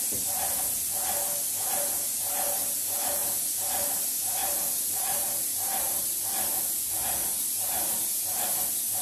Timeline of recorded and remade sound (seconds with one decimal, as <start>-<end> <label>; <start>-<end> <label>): 0.0-4.4 recorded; 4.4-6.3 remade; 6.3-9.0 recorded